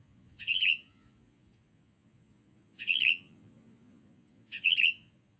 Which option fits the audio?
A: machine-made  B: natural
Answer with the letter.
A